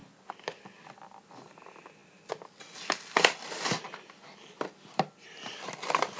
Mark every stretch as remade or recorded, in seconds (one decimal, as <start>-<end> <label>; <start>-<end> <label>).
0.0-6.2 recorded